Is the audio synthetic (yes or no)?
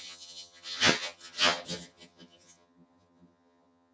yes